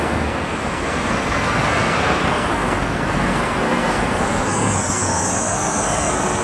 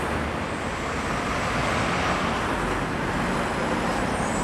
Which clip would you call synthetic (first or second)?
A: first